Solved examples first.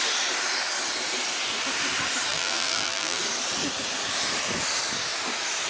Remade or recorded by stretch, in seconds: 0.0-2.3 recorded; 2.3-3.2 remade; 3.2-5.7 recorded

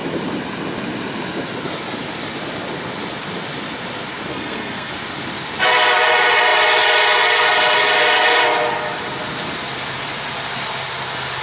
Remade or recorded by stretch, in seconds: 0.0-4.3 recorded; 4.3-4.9 remade; 4.9-11.4 recorded